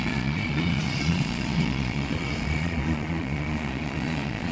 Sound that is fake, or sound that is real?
fake